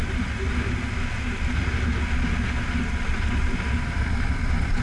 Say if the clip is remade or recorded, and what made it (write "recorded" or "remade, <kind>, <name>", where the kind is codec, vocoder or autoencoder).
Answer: recorded